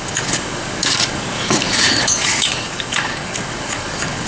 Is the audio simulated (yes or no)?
yes